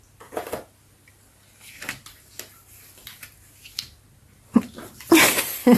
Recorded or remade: recorded